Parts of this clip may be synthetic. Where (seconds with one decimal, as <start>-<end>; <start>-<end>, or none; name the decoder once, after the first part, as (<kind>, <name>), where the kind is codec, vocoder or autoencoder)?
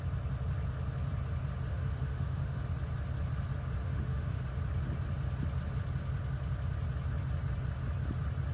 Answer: 1.7-2.6 (autoencoder, DAC-VAE); 3.8-4.4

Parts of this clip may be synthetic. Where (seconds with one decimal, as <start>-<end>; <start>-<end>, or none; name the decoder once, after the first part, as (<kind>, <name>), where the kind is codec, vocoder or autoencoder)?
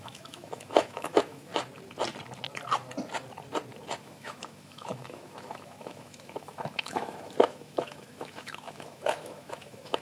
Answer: 0.0-1.5 (autoencoder, DAC-VAE); 4.0-10.0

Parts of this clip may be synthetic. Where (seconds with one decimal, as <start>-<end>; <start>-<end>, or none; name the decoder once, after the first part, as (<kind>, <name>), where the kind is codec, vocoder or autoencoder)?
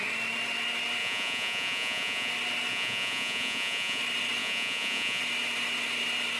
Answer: 1.0-2.3 (vocoder, Vocos); 2.7-4.0; 4.4-5.2